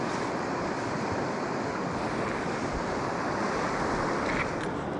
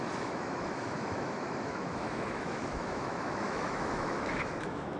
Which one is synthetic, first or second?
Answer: second